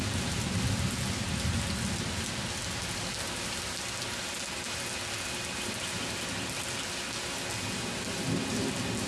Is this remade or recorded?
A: recorded